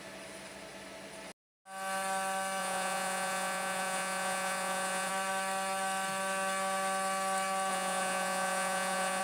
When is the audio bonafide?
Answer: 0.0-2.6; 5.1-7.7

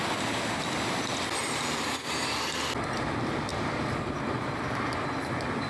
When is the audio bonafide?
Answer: 0.0-3.5; 5.3-5.7

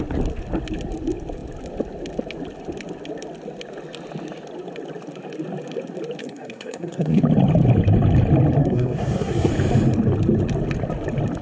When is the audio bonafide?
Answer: 0.0-6.2; 7.2-8.6; 9.5-11.4

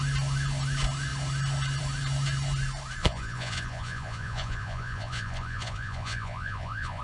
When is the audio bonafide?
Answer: 0.0-3.0

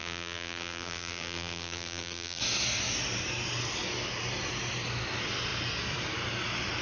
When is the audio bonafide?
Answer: 2.4-6.8

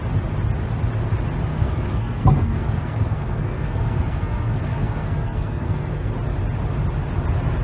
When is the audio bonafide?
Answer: 0.0-1.5; 6.1-7.6